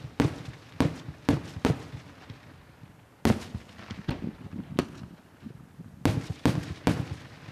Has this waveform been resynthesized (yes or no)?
no